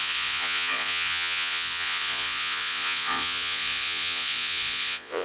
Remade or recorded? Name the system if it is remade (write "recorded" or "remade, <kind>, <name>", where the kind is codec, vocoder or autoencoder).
remade, vocoder, Vocos